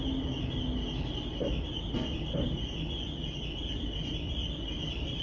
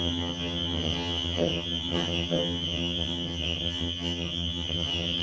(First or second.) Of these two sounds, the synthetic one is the second